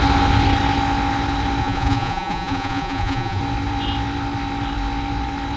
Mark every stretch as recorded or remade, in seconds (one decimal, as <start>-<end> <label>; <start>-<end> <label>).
0.0-1.6 recorded; 1.6-3.4 remade; 3.4-5.6 recorded